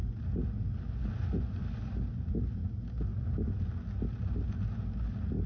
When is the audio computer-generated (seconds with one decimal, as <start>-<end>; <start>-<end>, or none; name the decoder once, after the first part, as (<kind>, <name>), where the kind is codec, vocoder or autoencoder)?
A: none